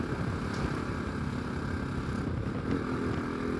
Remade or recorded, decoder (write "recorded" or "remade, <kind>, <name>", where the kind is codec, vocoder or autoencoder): recorded